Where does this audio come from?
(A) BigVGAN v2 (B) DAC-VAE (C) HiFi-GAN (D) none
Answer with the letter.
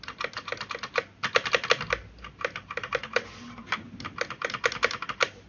D